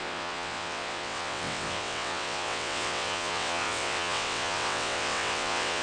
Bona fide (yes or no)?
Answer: no